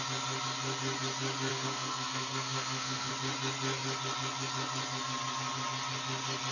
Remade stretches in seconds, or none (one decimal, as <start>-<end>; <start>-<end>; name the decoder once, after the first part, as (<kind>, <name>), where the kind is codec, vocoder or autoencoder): 1.5-3.1 (codec, SNAC)